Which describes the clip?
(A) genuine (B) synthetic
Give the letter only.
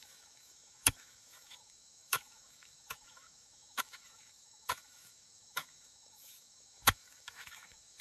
B